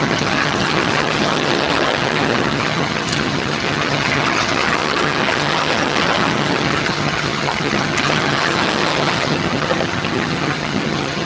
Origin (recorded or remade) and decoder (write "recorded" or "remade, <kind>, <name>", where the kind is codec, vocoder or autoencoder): remade, vocoder, HiFi-GAN